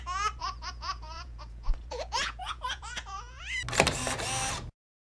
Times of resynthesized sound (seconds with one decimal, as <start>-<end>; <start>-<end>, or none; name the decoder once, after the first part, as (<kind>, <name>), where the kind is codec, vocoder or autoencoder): 0.4-3.4 (vocoder, Vocos)